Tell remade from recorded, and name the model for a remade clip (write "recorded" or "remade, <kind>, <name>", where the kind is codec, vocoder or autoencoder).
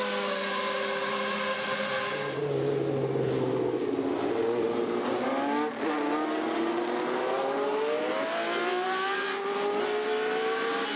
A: recorded